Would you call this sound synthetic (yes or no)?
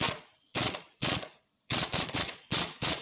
yes